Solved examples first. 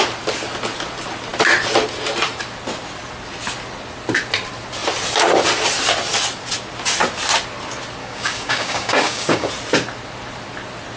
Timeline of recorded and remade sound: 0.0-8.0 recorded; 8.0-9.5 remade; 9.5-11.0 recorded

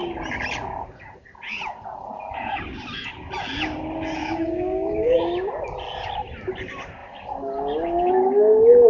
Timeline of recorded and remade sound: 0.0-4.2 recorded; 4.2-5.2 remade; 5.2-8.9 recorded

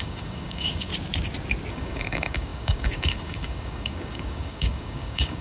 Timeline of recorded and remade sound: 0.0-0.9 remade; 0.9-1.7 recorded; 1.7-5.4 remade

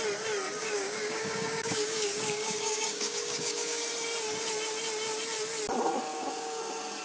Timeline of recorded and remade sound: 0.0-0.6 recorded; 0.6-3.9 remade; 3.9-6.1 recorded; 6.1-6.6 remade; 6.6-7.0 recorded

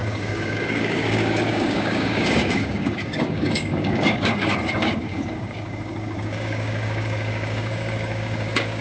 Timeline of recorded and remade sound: 0.0-8.8 remade

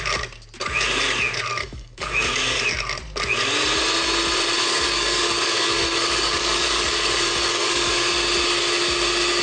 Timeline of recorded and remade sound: 0.0-1.6 recorded; 1.6-2.6 remade; 2.6-4.6 recorded; 4.6-7.9 remade; 7.9-9.4 recorded